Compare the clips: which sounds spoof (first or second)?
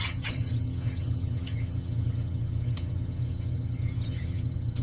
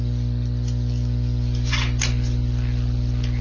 first